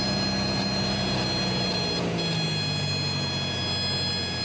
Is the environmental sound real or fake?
real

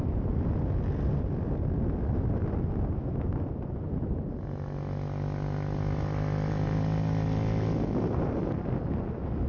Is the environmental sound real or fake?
real